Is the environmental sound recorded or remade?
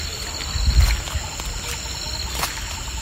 recorded